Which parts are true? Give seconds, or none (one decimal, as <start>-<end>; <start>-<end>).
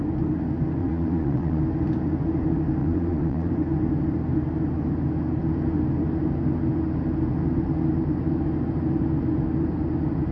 0.0-0.8; 1.6-2.8; 3.5-10.3